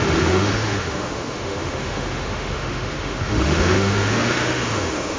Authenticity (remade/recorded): remade